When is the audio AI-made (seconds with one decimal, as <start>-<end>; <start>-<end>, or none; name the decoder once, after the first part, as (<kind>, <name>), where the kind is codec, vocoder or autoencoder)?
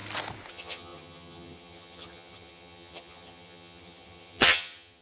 0.5-5.0 (vocoder, HiFi-GAN)